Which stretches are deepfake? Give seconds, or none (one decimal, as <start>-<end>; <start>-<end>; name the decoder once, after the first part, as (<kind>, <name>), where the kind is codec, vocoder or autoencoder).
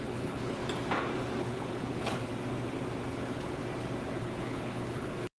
0.0-0.6 (codec, HILCodec); 1.4-2.3; 3.1-3.6; 4.2-5.4